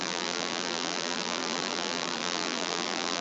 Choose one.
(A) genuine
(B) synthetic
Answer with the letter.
B